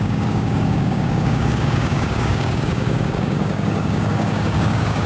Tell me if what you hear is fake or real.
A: fake